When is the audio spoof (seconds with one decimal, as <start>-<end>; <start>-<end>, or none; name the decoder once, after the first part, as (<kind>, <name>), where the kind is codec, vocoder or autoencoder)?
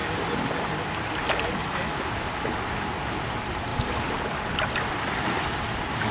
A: none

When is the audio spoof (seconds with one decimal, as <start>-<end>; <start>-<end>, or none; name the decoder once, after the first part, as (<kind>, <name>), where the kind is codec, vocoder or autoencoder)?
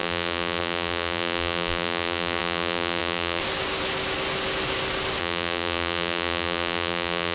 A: 0.0-3.4 (vocoder, BigVGAN v2); 5.2-7.3